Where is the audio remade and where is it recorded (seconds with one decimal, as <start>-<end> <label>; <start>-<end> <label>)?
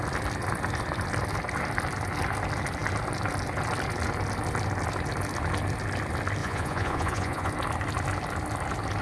0.0-6.4 recorded; 6.4-7.5 remade; 7.5-9.0 recorded